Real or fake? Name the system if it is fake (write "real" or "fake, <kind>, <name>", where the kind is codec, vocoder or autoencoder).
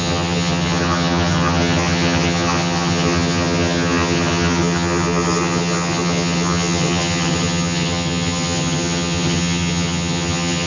fake, vocoder, HiFi-GAN